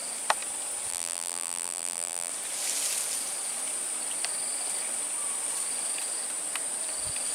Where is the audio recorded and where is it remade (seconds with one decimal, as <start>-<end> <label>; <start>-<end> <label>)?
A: 0.0-0.9 recorded; 0.9-2.3 remade; 2.3-7.3 recorded